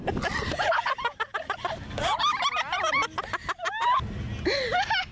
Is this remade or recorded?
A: recorded